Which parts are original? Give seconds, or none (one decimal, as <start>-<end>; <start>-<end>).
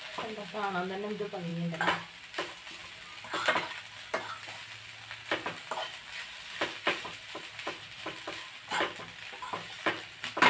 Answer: 0.0-10.5